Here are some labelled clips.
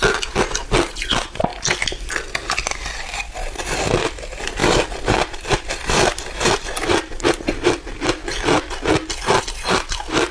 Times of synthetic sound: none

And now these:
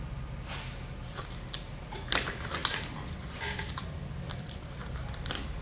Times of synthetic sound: 0.0-5.6 (vocoder, BigVGAN v2)